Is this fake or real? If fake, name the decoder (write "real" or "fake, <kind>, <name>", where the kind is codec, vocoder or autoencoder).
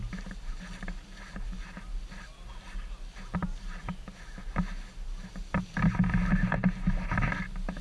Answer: real